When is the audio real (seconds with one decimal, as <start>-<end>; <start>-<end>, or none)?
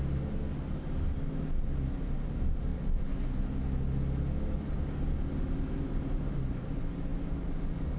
0.0-8.0